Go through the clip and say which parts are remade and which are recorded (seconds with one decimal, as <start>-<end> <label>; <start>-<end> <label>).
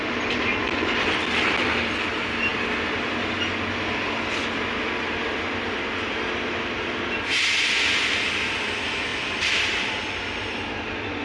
0.0-9.1 recorded; 9.1-9.9 remade; 9.9-11.2 recorded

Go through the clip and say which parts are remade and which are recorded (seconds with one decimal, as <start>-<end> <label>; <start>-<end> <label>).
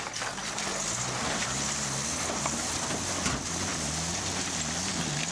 0.0-5.3 recorded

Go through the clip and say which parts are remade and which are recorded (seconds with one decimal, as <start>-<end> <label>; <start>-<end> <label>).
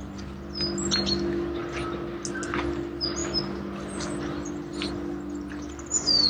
0.0-6.3 recorded